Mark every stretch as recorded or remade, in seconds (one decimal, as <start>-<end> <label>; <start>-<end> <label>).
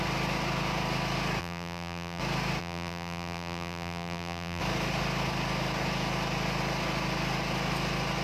0.0-1.4 recorded; 1.4-2.2 remade; 2.2-2.6 recorded; 2.6-4.6 remade; 4.6-8.2 recorded